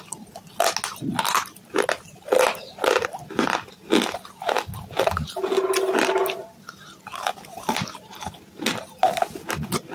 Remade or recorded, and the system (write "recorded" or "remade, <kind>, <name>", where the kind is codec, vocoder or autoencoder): recorded